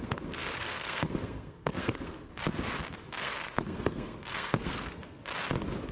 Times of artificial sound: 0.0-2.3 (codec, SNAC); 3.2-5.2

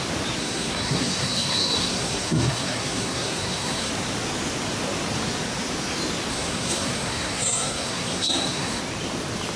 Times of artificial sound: 0.4-3.9 (codec, SNAC); 6.3-8.8